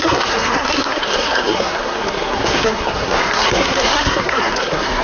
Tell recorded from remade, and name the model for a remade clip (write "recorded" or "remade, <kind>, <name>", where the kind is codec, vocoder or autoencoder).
remade, codec, SNAC